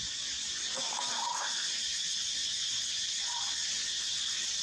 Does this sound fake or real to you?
real